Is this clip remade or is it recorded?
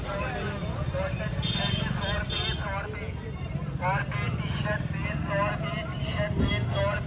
recorded